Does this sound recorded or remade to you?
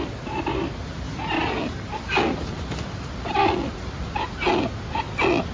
recorded